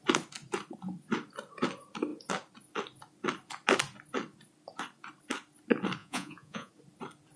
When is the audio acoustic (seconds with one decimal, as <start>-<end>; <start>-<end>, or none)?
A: 0.0-6.0; 6.7-7.4